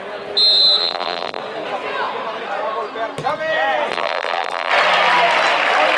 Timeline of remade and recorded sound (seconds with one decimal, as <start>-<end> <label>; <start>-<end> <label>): 0.0-0.8 recorded; 0.8-1.4 remade; 1.4-3.9 recorded; 3.9-4.7 remade; 4.7-6.0 recorded